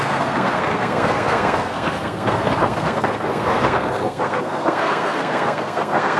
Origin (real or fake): fake